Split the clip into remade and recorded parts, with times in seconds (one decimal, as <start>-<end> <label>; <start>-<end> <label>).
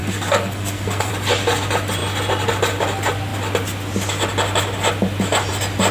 0.0-1.1 remade; 1.1-5.9 recorded